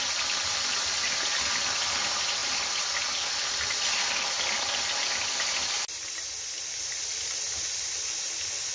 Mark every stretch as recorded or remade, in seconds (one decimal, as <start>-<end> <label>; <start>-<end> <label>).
0.0-8.7 recorded